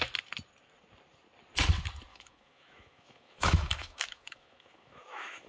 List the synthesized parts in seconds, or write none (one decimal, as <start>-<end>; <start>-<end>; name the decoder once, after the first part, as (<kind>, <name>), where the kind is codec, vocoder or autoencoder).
2.1-5.5 (autoencoder, DAC-VAE)